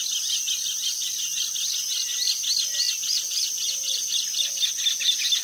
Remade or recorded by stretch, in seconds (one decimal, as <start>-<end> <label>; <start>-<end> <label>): 0.0-5.4 recorded